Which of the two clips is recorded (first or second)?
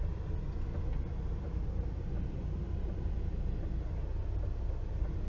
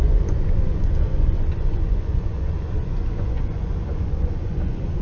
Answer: first